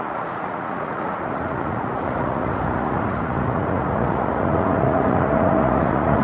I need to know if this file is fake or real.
fake